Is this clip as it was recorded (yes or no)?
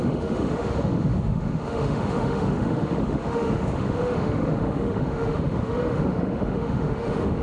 no